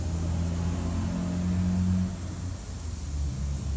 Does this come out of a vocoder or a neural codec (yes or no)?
no